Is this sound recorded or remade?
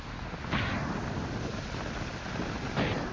recorded